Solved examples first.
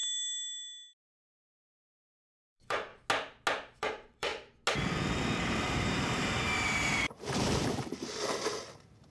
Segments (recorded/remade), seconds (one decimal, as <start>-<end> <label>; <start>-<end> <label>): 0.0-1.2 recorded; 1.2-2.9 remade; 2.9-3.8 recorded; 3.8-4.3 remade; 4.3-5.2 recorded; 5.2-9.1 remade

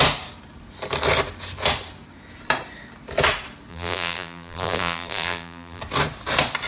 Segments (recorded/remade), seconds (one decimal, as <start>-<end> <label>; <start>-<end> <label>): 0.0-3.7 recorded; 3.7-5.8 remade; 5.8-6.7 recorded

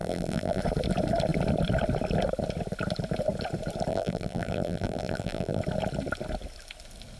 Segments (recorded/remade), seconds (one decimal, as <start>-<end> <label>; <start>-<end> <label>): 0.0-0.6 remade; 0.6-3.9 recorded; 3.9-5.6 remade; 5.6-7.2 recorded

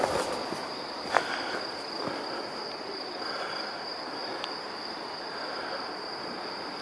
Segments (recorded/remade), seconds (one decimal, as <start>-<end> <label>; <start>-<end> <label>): 0.0-6.8 remade